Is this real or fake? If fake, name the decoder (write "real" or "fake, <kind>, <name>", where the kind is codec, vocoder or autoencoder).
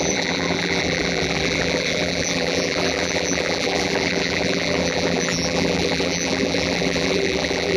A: fake, vocoder, BigVGAN v2